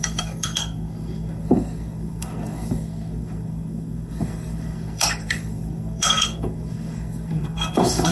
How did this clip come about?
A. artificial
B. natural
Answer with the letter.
A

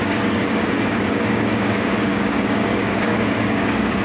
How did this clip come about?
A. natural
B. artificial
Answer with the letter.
B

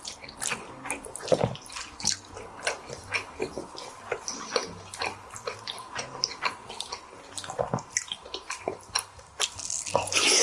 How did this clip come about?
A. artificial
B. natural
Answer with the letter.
B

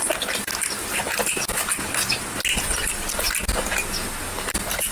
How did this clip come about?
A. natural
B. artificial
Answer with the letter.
A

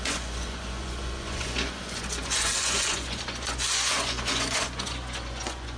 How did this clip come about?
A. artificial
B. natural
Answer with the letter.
A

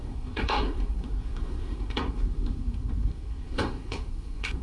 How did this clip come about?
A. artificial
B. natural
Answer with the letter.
A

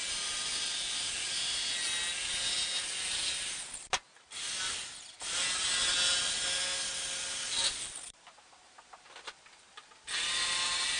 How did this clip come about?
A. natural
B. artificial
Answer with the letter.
A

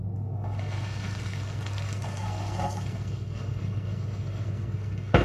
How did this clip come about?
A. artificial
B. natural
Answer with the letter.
A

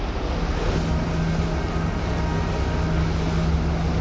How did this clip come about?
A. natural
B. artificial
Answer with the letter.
A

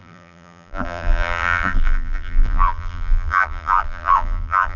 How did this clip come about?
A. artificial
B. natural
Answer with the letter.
A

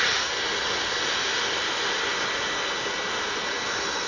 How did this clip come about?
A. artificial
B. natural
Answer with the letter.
B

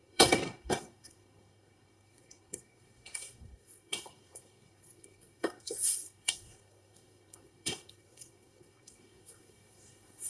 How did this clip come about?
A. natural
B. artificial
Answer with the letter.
B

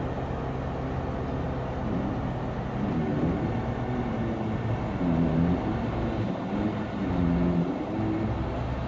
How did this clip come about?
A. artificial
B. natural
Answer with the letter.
B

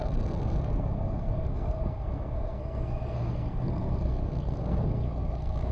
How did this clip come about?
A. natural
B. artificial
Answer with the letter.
B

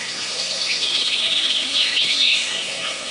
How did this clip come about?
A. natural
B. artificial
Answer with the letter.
B